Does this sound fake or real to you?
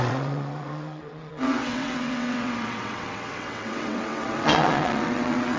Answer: fake